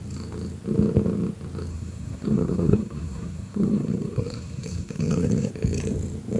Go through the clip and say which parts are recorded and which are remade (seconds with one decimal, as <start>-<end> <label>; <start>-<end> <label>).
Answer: 0.0-1.7 recorded; 1.7-5.5 remade; 5.5-6.4 recorded